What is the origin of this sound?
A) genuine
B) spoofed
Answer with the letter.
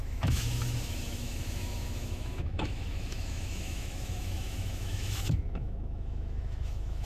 B